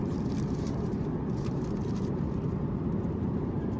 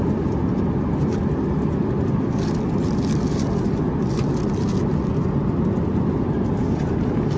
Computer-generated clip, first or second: first